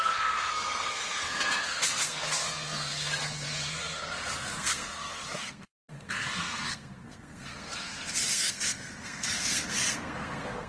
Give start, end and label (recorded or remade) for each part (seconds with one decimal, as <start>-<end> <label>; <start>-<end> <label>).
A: 0.0-10.7 remade